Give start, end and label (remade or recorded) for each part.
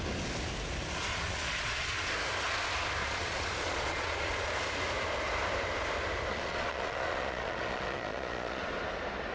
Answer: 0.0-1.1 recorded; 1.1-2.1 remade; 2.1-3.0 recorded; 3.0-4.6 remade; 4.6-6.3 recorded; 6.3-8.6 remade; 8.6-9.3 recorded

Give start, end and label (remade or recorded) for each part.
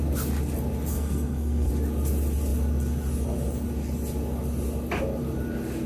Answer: 0.0-0.9 recorded; 0.9-1.7 remade; 1.7-5.9 recorded